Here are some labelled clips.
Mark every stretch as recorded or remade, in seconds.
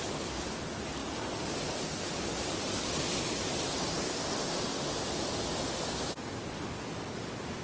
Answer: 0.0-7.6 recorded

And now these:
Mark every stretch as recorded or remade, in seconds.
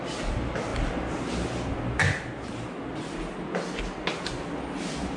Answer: 0.0-5.2 recorded